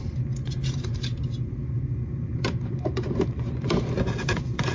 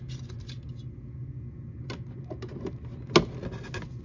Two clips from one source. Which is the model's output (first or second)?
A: first